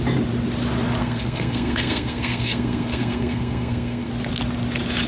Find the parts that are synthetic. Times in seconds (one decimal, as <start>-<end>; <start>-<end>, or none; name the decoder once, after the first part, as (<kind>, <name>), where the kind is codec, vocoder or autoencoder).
1.0-4.1 (codec, SNAC)